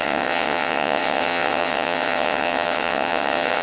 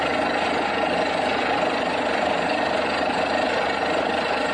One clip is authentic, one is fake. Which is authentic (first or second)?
second